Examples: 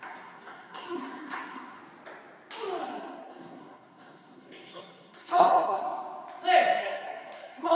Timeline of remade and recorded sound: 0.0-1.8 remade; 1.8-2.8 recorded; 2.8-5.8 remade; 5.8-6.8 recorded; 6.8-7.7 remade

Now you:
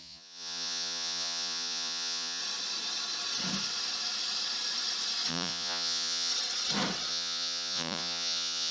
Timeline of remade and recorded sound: 0.0-2.4 remade; 2.4-5.3 recorded; 5.3-6.3 remade; 6.3-7.1 recorded; 7.1-8.7 remade

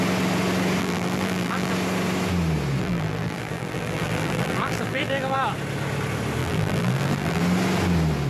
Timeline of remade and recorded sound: 0.0-0.8 recorded; 0.8-1.7 remade; 1.7-2.8 recorded; 2.8-5.4 remade; 5.4-6.4 recorded; 6.4-7.4 remade; 7.4-8.3 recorded

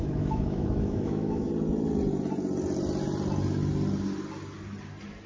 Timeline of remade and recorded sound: 0.0-1.5 remade; 1.5-5.3 recorded